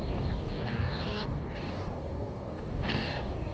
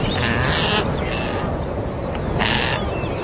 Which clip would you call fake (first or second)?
first